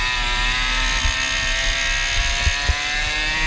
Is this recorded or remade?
recorded